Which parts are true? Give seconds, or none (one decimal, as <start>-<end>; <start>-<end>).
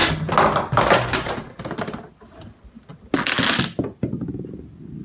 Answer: 0.0-1.0; 2.9-5.0